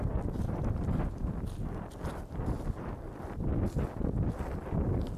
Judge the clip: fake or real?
real